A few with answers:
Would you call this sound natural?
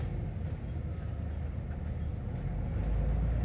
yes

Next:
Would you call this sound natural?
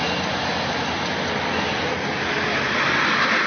yes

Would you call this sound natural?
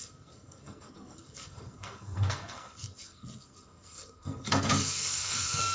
no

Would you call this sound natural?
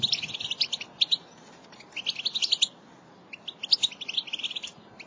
yes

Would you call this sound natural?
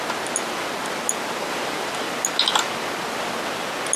yes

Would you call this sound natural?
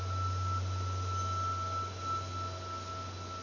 yes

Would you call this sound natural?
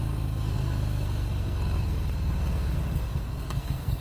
no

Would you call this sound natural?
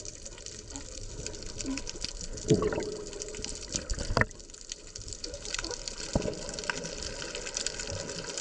yes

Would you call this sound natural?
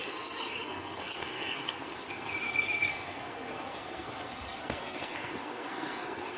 no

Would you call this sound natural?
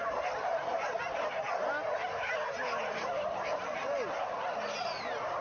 yes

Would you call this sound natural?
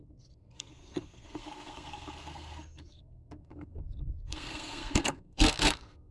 no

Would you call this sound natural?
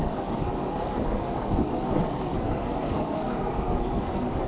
no